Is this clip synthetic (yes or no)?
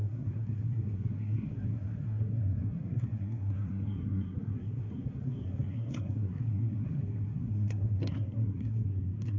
yes